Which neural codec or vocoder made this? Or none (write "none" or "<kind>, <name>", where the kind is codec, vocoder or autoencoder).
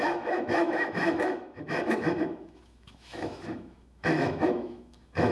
autoencoder, DAC-VAE